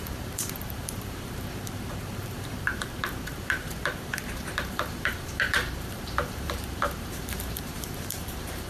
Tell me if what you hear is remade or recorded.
remade